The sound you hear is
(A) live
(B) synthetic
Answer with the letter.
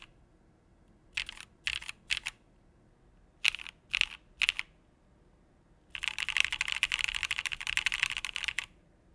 A